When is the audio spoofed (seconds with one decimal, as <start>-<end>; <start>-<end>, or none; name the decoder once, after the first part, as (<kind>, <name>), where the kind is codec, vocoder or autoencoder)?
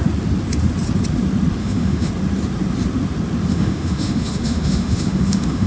1.6-2.1 (autoencoder, DAC-VAE); 3.5-5.7